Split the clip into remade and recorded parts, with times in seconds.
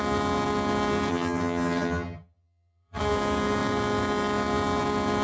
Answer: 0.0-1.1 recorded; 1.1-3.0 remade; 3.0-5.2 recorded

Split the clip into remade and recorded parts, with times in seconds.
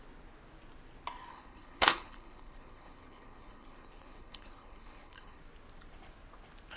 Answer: 0.0-1.3 recorded; 1.3-5.4 remade; 5.4-6.8 recorded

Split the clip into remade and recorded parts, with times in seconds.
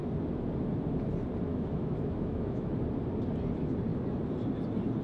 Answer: 0.0-1.5 recorded; 1.5-2.7 remade; 2.7-5.0 recorded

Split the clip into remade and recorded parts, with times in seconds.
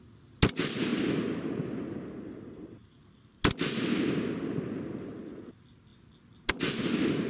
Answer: 0.0-7.3 recorded